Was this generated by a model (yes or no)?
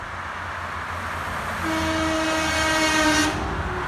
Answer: no